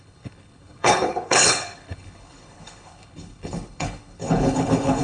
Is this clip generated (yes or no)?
yes